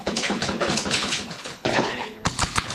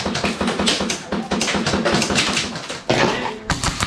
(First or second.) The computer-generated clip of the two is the first